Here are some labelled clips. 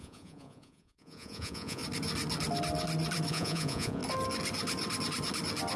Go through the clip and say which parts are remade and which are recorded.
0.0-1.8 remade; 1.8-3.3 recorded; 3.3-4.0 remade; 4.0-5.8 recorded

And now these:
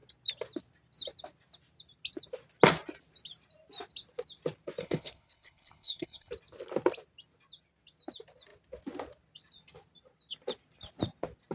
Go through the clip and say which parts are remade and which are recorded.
0.0-4.8 recorded; 4.8-6.3 remade; 6.3-11.5 recorded

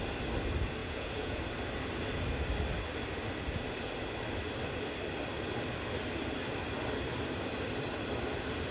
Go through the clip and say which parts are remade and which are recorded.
0.0-0.8 recorded; 0.8-1.4 remade; 1.4-8.7 recorded

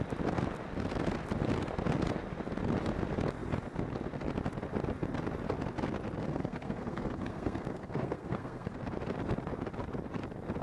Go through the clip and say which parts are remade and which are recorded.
0.0-6.2 recorded; 6.2-8.8 remade; 8.8-10.6 recorded